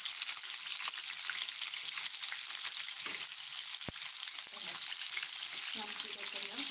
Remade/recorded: recorded